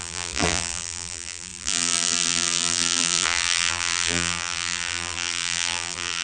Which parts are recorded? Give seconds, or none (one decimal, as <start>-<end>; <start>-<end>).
none